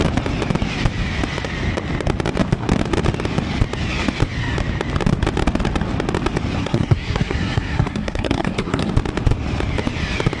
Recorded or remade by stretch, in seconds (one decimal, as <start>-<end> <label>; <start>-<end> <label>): 0.0-6.6 recorded; 6.6-8.9 remade; 8.9-10.4 recorded